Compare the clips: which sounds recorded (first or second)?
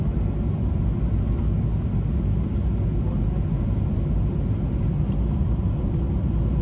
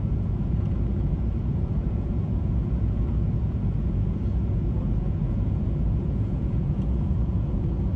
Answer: first